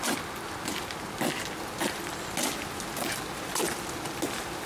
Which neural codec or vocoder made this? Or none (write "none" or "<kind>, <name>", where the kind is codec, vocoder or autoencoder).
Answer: none